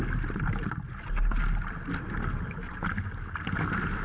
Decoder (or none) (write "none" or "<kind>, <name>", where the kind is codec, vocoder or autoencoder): none